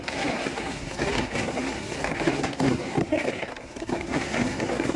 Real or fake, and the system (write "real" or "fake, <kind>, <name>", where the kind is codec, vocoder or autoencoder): fake, codec, SNAC